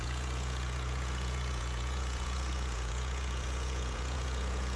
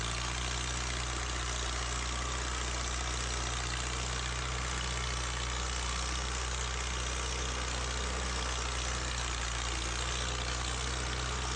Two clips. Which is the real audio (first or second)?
second